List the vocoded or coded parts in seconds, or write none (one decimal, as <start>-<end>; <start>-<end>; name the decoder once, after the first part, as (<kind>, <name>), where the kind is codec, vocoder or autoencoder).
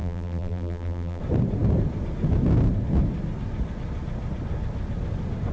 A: 0.0-1.2 (vocoder, BigVGAN v2)